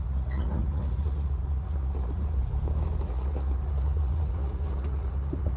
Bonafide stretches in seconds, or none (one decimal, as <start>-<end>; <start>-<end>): 2.4-3.0